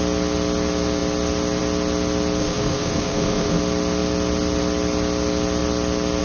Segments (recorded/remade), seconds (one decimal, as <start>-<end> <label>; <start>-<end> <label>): 0.0-2.4 recorded; 2.4-3.6 remade; 3.6-6.2 recorded